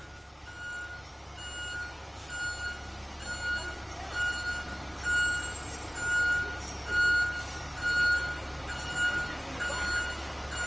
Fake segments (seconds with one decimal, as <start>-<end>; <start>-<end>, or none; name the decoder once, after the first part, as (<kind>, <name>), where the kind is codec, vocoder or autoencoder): 0.0-1.1 (autoencoder, DAC-VAE)